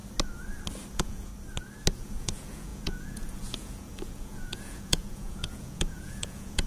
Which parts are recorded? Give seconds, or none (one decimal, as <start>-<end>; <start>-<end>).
0.0-0.9; 1.3-1.9